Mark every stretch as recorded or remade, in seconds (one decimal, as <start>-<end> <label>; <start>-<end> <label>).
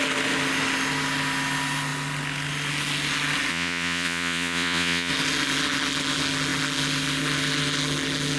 0.0-3.5 recorded; 3.5-5.1 remade; 5.1-8.4 recorded